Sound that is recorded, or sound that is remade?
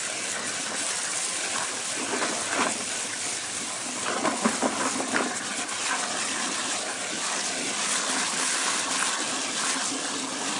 recorded